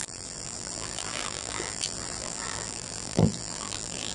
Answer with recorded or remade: remade